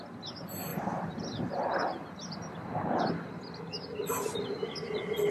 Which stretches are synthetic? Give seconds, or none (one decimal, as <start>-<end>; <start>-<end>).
0.7-3.0